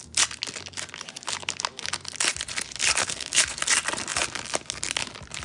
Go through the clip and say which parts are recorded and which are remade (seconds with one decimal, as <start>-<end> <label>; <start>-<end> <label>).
0.0-3.0 recorded; 3.0-3.6 remade; 3.6-5.4 recorded